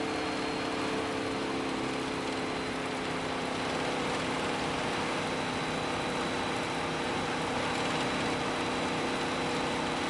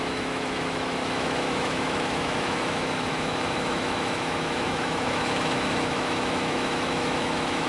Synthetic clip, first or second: second